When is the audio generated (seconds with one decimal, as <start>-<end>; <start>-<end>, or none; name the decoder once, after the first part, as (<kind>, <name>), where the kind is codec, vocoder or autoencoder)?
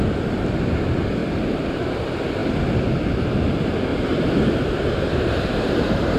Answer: 1.2-1.9 (vocoder, BigVGAN v2); 3.9-6.2